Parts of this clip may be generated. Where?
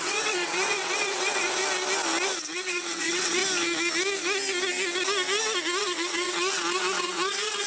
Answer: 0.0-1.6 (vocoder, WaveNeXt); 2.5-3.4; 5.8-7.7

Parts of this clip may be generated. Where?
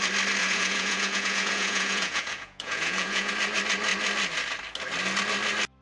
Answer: 0.4-3.3 (vocoder, Vocos)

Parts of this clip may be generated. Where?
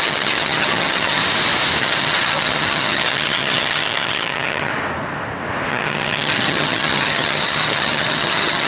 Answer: 0.0-1.2 (vocoder, HiFi-GAN); 1.8-4.7; 5.7-8.7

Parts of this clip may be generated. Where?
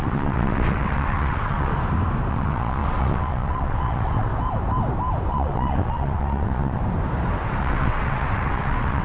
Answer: 0.0-1.7 (vocoder, WaveNeXt); 2.3-4.3; 5.3-6.8; 7.6-9.0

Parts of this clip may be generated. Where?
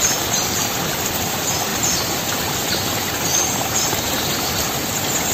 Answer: none